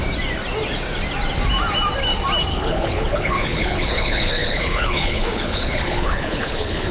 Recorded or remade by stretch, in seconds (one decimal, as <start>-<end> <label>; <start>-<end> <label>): 0.0-2.5 recorded; 2.5-6.9 remade